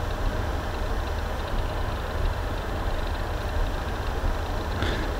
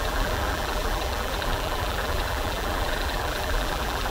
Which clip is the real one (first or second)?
first